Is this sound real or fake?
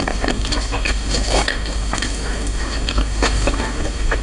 fake